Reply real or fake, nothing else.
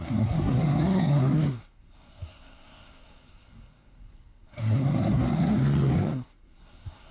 fake